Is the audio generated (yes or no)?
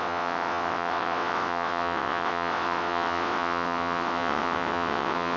yes